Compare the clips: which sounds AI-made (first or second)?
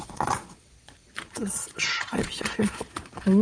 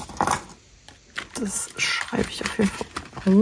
first